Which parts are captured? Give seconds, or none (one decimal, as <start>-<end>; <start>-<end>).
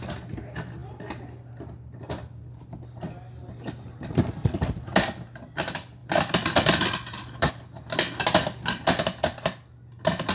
0.0-2.4; 3.5-6.0; 7.5-10.3